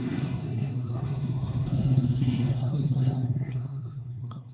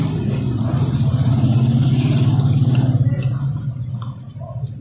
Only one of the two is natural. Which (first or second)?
second